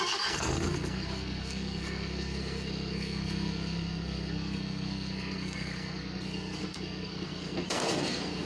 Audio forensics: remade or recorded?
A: remade